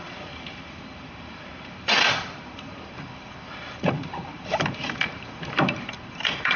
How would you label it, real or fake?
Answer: fake